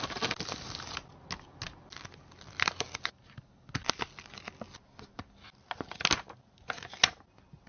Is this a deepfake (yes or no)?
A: no